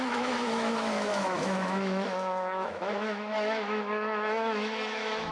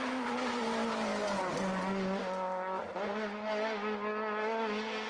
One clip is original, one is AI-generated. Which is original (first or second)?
second